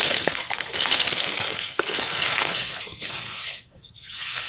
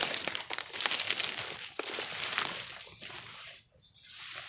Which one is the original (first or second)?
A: second